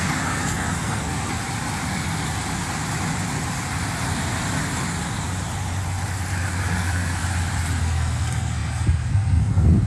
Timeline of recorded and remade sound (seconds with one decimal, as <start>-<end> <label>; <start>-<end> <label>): 0.0-1.4 remade; 1.4-6.5 recorded; 6.5-7.2 remade; 7.2-7.8 recorded; 7.8-9.9 remade